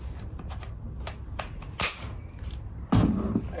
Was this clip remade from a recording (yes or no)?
no